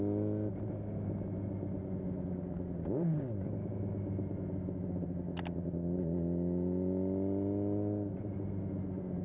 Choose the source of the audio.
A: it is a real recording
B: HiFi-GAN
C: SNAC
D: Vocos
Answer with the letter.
A